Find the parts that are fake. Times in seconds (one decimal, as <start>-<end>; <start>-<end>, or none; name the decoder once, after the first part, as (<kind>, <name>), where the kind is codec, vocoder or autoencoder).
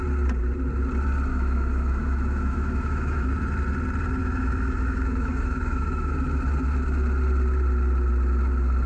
1.3-3.3 (autoencoder, DAC-VAE); 4.2-6.1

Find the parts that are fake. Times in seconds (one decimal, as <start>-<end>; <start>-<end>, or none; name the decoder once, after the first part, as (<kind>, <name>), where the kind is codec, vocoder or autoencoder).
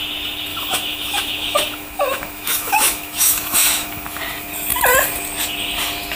0.5-4.2 (autoencoder, DAC-VAE)